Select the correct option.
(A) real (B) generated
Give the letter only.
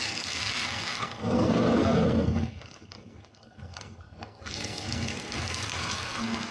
B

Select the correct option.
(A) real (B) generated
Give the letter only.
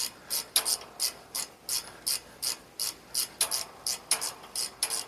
A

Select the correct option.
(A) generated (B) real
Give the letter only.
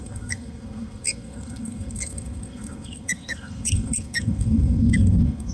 A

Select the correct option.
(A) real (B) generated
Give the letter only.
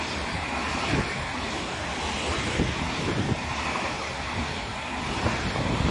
A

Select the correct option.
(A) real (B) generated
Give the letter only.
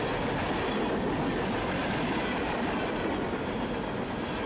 A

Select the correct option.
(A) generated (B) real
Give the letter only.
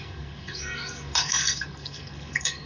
A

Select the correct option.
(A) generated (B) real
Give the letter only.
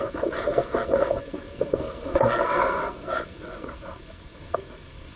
A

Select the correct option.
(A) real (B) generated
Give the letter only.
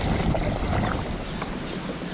A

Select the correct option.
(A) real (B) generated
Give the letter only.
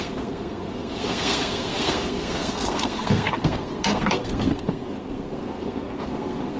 B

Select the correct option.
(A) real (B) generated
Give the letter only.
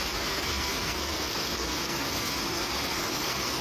B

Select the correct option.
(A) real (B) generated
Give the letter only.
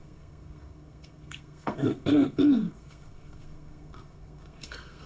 B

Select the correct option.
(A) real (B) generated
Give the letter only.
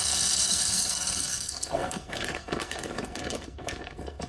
B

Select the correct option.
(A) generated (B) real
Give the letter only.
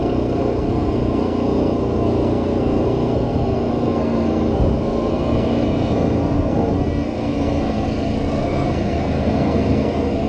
A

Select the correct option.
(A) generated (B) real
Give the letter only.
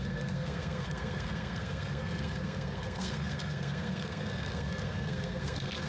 A